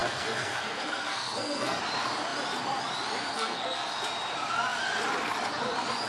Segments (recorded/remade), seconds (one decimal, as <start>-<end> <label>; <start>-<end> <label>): 0.0-1.8 remade; 1.8-3.3 recorded; 3.3-3.9 remade; 3.9-6.1 recorded